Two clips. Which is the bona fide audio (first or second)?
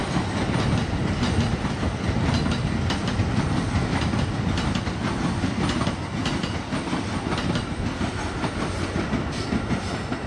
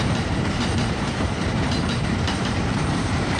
first